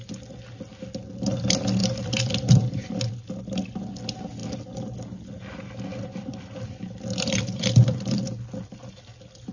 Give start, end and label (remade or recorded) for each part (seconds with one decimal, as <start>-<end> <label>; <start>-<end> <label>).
0.0-1.8 recorded; 1.8-3.1 remade; 3.1-5.9 recorded; 5.9-8.6 remade; 8.6-9.5 recorded

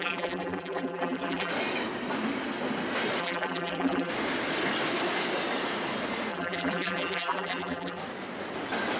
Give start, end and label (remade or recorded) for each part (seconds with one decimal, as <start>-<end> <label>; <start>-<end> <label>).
0.0-1.5 remade; 1.5-3.2 recorded; 3.2-4.1 remade; 4.1-6.3 recorded; 6.3-8.0 remade; 8.0-9.0 recorded

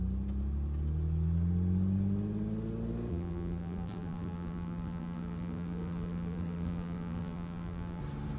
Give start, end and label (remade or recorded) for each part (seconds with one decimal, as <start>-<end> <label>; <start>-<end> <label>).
0.0-3.1 recorded; 3.1-8.0 remade; 8.0-8.4 recorded

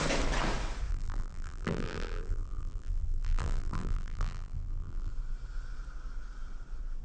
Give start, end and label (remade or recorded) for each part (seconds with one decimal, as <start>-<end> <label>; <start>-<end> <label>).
0.0-0.9 recorded; 0.9-5.1 remade; 5.1-7.0 recorded

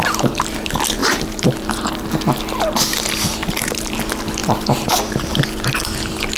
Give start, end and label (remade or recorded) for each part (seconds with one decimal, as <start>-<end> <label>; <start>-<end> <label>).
0.0-1.0 recorded; 1.0-2.4 remade; 2.4-3.3 recorded; 3.3-4.0 remade; 4.0-4.4 recorded; 4.4-5.4 remade; 5.4-6.4 recorded

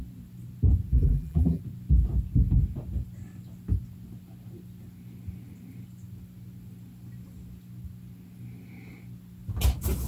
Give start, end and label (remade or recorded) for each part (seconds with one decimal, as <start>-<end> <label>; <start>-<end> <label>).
0.0-0.9 recorded; 0.9-1.6 remade; 1.6-10.1 recorded